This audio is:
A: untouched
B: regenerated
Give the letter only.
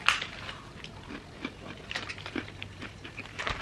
A